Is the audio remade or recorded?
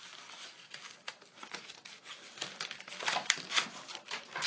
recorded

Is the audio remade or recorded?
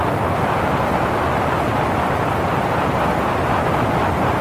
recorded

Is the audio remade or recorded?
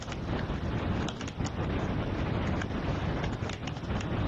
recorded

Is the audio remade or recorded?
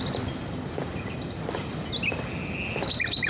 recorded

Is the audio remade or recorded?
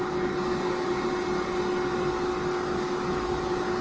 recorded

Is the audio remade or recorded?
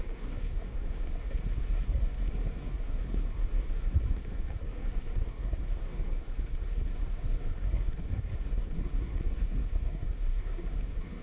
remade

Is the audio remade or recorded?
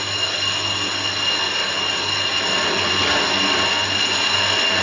recorded